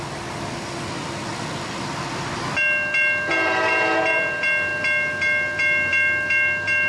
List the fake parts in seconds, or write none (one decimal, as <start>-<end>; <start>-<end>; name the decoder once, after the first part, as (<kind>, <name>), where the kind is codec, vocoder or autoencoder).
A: none